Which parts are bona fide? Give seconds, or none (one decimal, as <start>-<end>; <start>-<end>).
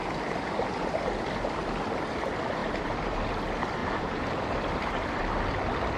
0.0-2.6; 3.2-3.8; 5.2-6.0